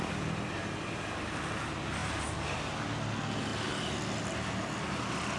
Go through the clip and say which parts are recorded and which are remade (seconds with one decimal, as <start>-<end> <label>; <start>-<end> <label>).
0.0-5.4 recorded